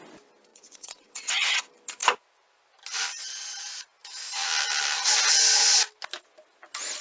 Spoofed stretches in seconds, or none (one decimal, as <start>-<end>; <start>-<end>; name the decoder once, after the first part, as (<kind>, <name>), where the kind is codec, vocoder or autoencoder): 0.5-1.6 (vocoder, WaveNeXt)